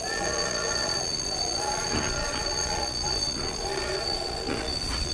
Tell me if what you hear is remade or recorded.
remade